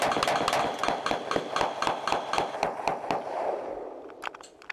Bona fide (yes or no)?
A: yes